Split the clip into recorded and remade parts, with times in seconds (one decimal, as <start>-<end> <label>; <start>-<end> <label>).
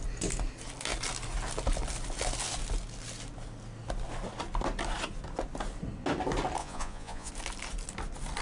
0.0-6.6 recorded; 6.6-7.3 remade; 7.3-8.4 recorded